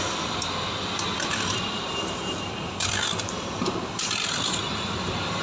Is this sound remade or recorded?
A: remade